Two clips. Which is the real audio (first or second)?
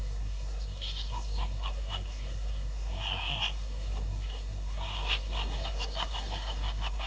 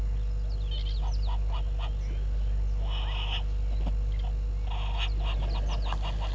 second